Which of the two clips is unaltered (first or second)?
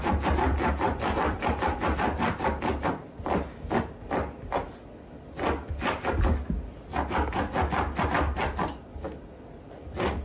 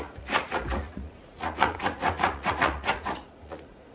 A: first